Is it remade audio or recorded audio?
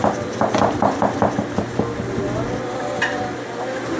recorded